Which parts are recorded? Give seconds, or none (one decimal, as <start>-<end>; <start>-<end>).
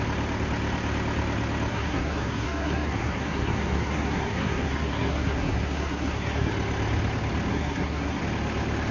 0.0-1.7; 6.5-7.5; 8.2-8.9